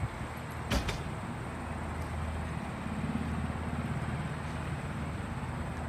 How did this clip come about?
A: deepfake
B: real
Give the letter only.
B